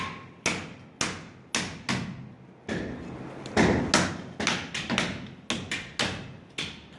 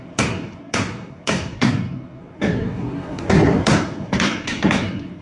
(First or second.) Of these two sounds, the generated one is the second